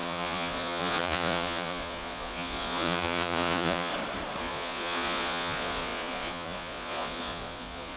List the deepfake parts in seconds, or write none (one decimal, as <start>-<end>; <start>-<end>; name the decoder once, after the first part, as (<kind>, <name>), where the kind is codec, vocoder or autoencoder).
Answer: 0.0-3.9 (vocoder, Vocos); 4.4-8.0